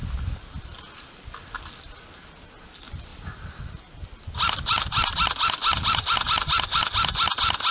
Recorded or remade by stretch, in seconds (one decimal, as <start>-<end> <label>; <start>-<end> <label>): 0.0-3.1 recorded; 3.1-3.6 remade; 3.6-5.6 recorded; 5.6-6.9 remade; 6.9-7.7 recorded